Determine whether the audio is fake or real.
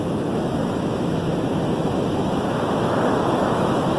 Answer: fake